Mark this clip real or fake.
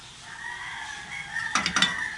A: real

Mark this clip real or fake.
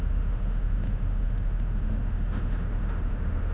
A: fake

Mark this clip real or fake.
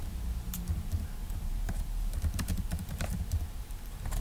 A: fake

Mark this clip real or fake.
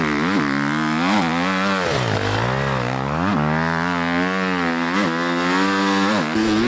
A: real